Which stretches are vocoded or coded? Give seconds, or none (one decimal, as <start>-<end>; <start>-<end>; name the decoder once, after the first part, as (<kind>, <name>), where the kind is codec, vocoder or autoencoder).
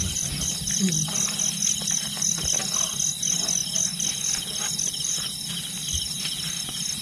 none